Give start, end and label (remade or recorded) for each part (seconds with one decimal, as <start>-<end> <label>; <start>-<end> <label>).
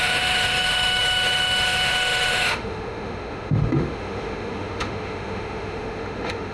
0.0-6.5 remade